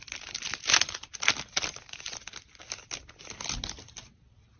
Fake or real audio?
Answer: real